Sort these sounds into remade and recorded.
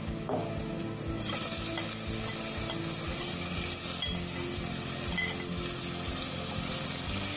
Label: recorded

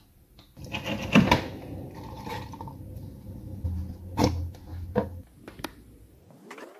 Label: recorded